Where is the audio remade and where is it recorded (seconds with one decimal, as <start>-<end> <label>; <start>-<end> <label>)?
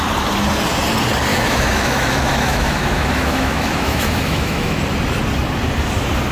0.0-1.3 recorded; 1.3-4.8 remade; 4.8-6.3 recorded